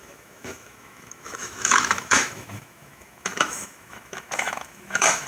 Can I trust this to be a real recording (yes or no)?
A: no